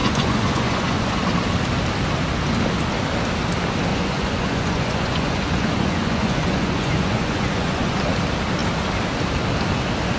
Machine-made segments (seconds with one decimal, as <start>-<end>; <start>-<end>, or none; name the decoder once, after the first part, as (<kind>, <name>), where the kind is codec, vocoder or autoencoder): 0.0-1.2 (vocoder, Vocos); 3.9-8.0